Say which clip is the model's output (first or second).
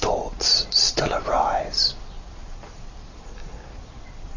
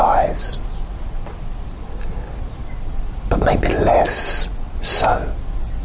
first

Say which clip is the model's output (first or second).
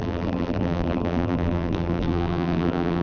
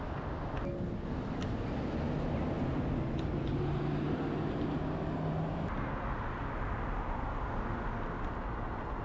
first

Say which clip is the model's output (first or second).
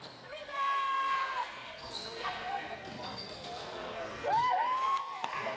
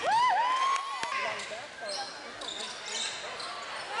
first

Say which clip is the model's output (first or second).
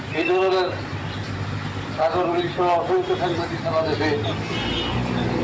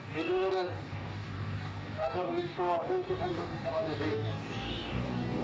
second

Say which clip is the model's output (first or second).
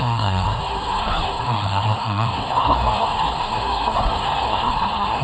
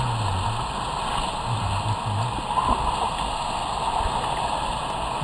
first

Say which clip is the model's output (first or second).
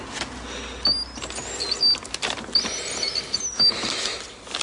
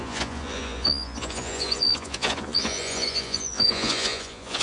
second